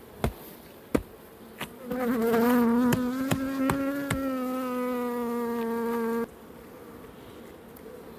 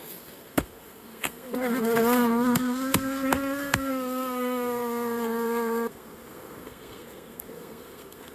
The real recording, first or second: first